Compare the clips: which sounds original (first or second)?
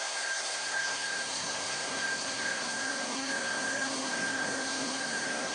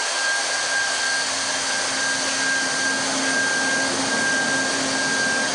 second